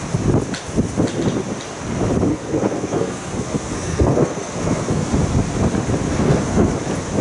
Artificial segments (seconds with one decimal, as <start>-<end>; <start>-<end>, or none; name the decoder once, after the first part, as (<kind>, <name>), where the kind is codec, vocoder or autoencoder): 2.3-5.1 (codec, SNAC); 6.1-6.7